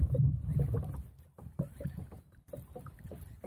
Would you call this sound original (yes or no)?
no